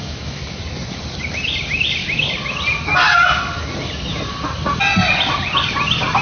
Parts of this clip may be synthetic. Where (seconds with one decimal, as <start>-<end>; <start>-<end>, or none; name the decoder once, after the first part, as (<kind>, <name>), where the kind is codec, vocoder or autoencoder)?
0.0-0.6 (autoencoder, DAC-VAE)